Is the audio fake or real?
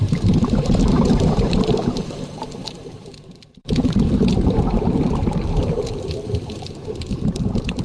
fake